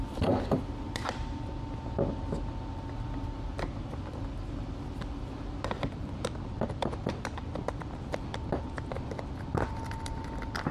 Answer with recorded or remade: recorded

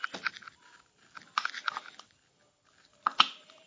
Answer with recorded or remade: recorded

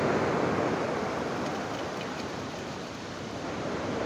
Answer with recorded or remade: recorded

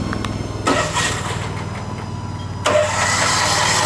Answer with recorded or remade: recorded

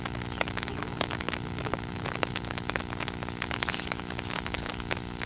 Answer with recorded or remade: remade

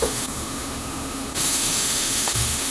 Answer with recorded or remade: remade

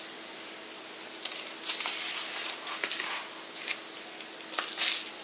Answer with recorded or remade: recorded